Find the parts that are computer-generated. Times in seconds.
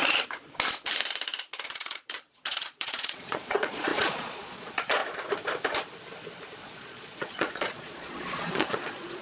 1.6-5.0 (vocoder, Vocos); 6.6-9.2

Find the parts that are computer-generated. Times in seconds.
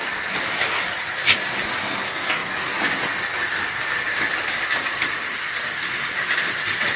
none